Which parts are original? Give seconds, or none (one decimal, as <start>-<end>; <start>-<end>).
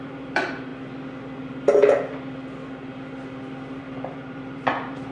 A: 0.7-3.8